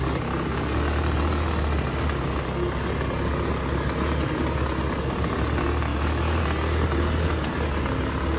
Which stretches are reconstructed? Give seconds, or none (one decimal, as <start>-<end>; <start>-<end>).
none